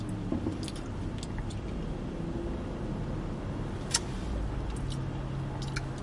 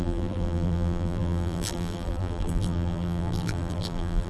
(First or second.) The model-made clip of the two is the second